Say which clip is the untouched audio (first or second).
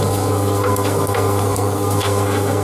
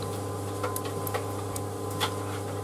second